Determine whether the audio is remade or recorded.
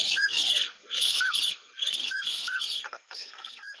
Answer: remade